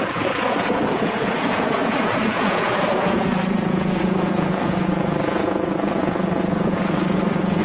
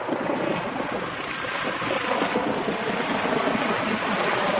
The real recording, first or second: second